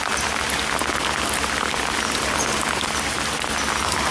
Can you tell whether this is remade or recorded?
recorded